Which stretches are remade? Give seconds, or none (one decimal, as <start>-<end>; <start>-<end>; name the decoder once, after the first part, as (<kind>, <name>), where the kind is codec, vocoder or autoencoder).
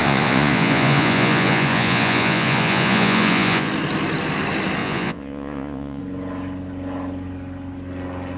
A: 0.0-3.7 (vocoder, Vocos); 4.8-6.0